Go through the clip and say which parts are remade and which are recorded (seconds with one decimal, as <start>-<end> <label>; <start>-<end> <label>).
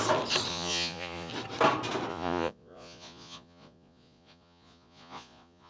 0.0-0.5 recorded; 0.5-1.3 remade; 1.3-2.1 recorded; 2.1-5.7 remade